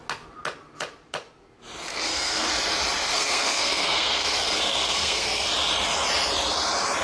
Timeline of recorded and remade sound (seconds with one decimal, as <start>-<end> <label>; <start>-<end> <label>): 0.0-1.9 recorded; 1.9-2.5 remade; 2.5-3.1 recorded; 3.1-5.5 remade; 5.5-7.0 recorded